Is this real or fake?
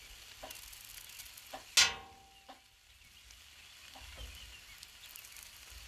real